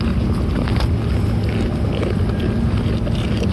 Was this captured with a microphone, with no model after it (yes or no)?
yes